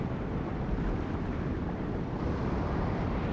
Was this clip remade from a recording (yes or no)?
yes